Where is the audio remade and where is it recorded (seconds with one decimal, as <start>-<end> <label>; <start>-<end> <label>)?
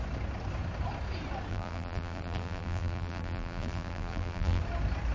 0.0-1.5 recorded; 1.5-4.6 remade; 4.6-5.1 recorded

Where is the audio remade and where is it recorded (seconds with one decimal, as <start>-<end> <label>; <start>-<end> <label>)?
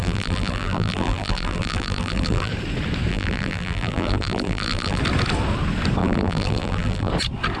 0.0-2.5 remade; 2.5-3.1 recorded; 3.1-5.0 remade; 5.0-6.0 recorded; 6.0-7.1 remade; 7.1-7.6 recorded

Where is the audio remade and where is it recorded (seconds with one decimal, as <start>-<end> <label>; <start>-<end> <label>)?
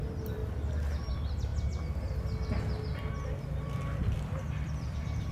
0.0-0.4 remade; 0.4-1.1 recorded; 1.1-1.5 remade; 1.5-3.1 recorded; 3.1-5.3 remade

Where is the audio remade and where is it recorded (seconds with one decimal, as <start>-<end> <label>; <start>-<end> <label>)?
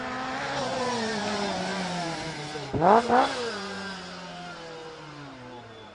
0.0-5.9 recorded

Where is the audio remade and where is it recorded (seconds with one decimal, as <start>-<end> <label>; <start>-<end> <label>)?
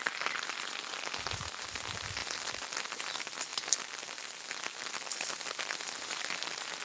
0.0-3.5 remade; 3.5-4.9 recorded; 4.9-6.8 remade